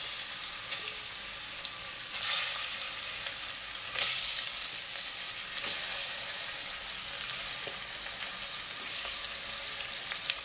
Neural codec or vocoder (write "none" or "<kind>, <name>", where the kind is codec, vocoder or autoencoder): none